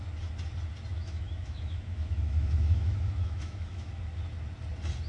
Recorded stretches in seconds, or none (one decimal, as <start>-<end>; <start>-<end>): 0.0-0.9; 4.0-5.1